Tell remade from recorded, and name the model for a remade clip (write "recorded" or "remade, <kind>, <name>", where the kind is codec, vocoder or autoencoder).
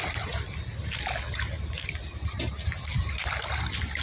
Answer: recorded